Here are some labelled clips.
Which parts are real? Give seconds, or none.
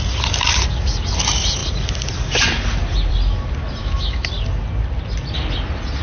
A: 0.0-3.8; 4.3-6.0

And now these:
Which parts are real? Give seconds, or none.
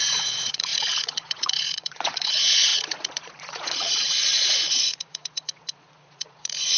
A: none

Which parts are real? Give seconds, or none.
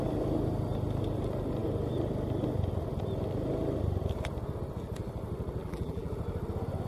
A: 0.0-5.6; 6.1-6.9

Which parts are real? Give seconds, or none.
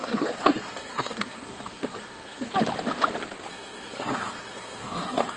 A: 2.5-3.5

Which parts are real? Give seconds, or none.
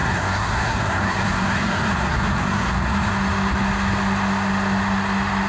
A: 3.1-5.5